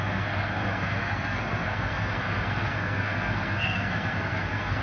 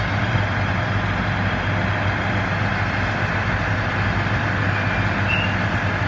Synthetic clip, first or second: first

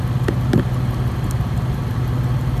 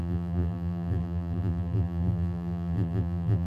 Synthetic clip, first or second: second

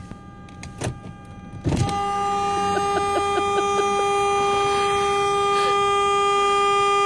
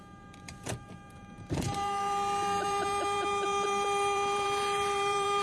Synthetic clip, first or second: second